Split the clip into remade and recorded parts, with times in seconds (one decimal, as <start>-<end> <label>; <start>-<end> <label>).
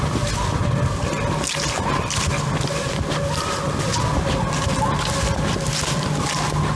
0.0-6.8 recorded